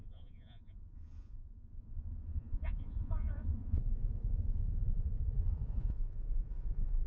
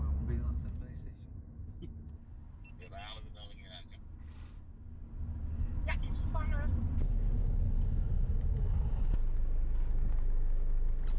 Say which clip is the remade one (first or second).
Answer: first